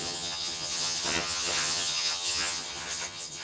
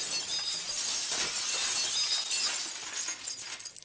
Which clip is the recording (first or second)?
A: second